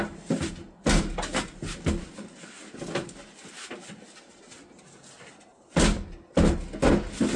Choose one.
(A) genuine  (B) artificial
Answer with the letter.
A